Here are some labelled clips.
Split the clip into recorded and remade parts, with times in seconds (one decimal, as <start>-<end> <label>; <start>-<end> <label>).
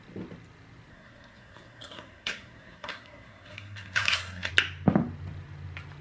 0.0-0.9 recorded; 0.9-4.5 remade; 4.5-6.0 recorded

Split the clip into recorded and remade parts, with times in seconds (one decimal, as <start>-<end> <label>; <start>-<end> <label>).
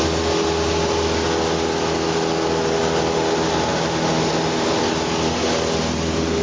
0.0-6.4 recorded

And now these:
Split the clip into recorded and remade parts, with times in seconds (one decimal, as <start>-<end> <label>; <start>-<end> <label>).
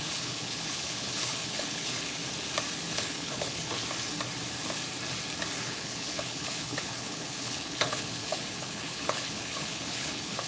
0.0-2.2 remade; 2.2-2.9 recorded; 2.9-3.8 remade; 3.8-5.6 recorded; 5.6-10.5 remade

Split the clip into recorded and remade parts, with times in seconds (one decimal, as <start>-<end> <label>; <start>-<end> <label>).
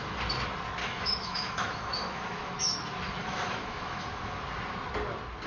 0.0-0.8 recorded; 0.8-2.5 remade; 2.5-3.2 recorded; 3.2-4.4 remade; 4.4-5.5 recorded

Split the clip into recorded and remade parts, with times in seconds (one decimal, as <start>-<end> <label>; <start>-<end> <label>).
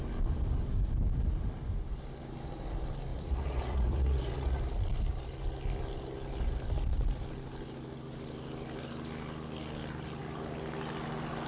0.0-3.1 recorded; 3.1-4.6 remade; 4.6-11.5 recorded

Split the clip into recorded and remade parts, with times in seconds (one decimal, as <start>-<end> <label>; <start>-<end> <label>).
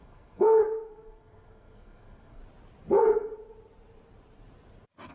0.0-2.4 remade; 2.4-5.1 recorded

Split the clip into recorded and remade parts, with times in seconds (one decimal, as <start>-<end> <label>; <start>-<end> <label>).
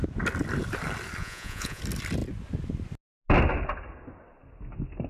0.0-1.2 recorded; 1.2-1.8 remade; 1.8-5.1 recorded